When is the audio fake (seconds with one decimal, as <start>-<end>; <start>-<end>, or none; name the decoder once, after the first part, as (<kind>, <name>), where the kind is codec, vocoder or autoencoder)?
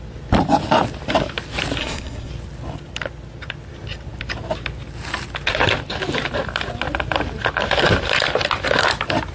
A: 1.8-2.3 (codec, SNAC)